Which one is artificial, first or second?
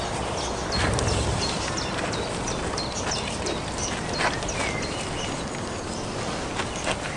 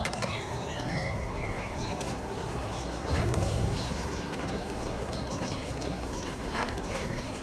second